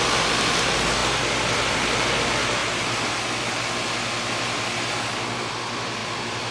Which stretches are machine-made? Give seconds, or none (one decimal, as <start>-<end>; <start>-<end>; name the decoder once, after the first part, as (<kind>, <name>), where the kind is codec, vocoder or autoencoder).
6.0-6.5 (vocoder, BigVGAN v2)